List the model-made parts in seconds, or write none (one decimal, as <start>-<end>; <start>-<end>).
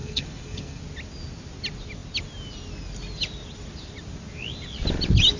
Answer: 0.0-0.8